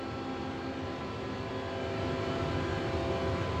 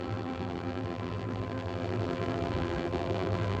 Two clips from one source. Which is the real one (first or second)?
first